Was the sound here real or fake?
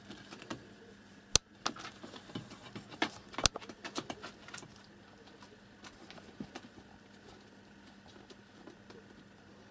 real